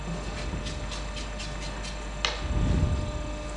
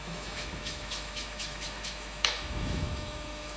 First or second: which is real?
first